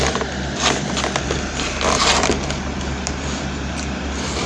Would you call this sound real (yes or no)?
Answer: yes